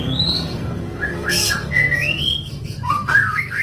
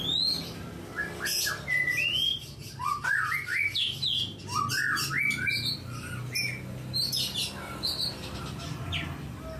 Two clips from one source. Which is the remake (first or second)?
first